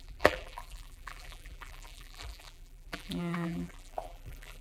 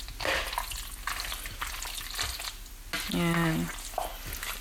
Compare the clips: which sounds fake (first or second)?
first